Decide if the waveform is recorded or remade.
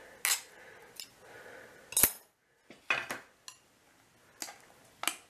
recorded